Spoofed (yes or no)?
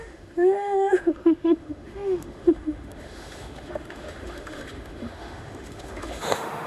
yes